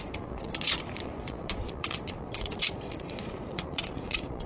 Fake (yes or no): yes